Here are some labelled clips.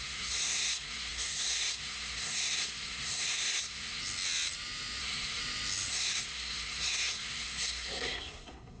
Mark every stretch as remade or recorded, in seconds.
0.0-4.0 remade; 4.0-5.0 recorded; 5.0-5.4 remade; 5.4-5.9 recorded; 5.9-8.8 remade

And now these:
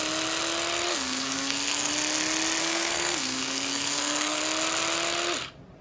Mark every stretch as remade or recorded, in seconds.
0.0-0.9 recorded; 0.9-1.9 remade; 1.9-2.6 recorded; 2.6-4.4 remade; 4.4-5.8 recorded

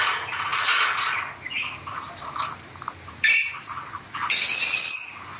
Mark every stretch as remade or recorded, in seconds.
0.0-5.4 recorded

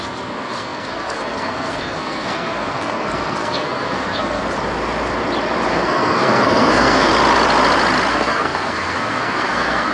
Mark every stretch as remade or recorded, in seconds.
0.0-4.4 remade; 4.4-5.7 recorded; 5.7-7.1 remade; 7.1-8.1 recorded; 8.1-9.9 remade

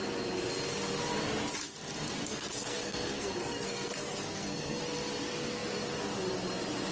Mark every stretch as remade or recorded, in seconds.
0.0-2.3 recorded; 2.3-4.8 remade; 4.8-6.9 recorded

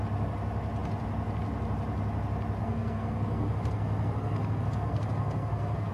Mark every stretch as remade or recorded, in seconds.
0.0-2.6 recorded; 2.6-5.9 remade